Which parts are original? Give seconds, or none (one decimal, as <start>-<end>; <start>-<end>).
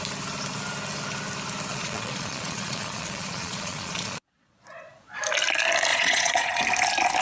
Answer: 0.0-1.7; 5.2-5.9; 6.6-7.2